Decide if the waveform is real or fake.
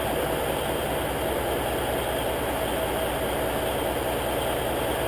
real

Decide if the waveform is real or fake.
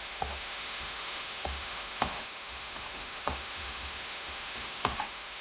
fake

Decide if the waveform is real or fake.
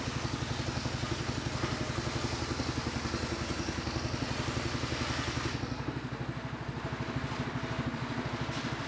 real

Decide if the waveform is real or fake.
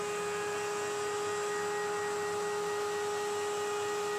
real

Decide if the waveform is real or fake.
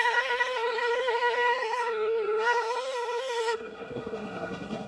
fake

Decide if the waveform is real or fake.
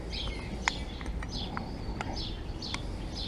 real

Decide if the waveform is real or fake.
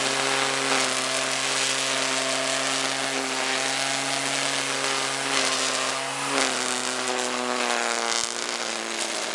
real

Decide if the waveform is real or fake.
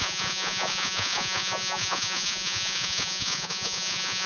fake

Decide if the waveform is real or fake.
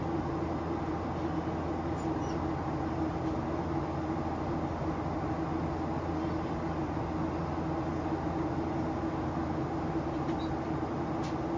real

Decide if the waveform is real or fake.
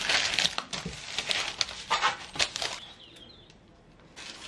real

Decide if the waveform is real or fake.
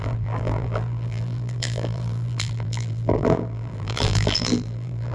fake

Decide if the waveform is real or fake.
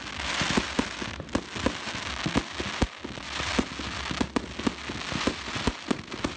real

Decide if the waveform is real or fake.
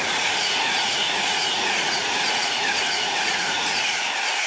fake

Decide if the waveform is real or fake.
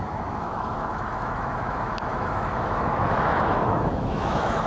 fake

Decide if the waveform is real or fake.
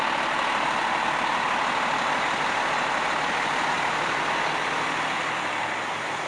real